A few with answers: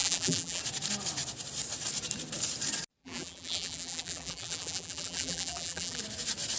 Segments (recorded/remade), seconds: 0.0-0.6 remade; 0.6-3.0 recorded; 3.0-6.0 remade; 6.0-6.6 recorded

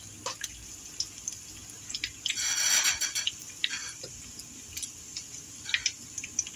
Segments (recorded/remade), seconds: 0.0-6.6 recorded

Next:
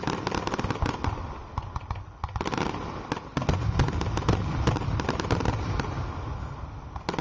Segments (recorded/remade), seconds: 0.0-7.2 recorded

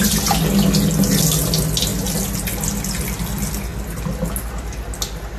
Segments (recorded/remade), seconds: 0.0-5.4 recorded

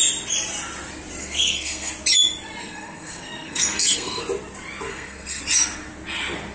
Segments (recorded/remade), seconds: 0.0-1.2 recorded; 1.2-1.9 remade; 1.9-2.6 recorded; 2.6-4.2 remade; 4.2-4.9 recorded; 4.9-5.4 remade; 5.4-6.5 recorded

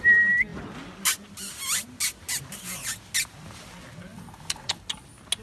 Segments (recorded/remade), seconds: 0.0-5.4 recorded

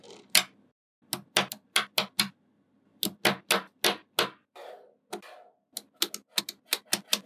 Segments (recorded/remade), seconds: 0.0-7.3 recorded

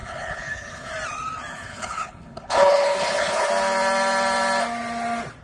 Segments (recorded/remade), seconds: 0.0-0.9 remade; 0.9-1.5 recorded; 1.5-3.5 remade; 3.5-5.4 recorded